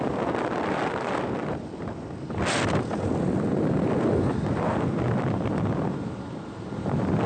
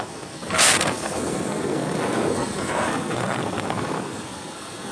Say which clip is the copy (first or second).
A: second